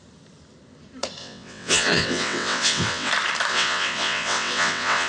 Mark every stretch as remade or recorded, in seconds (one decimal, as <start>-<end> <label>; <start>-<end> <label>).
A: 0.0-1.2 recorded; 1.2-3.1 remade; 3.1-3.5 recorded; 3.5-5.1 remade